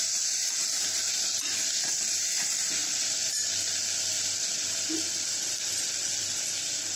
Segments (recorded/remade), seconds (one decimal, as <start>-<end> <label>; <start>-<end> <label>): 0.0-7.0 recorded